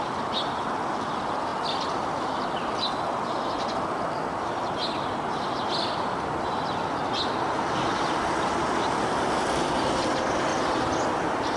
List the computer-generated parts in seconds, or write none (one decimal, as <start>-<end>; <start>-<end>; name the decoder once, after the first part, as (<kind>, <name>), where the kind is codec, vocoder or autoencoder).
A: none